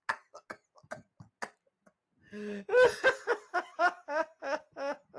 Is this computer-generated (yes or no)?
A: no